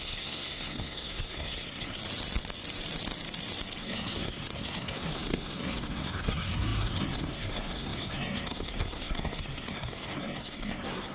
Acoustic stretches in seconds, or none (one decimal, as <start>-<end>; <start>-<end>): 2.0-3.8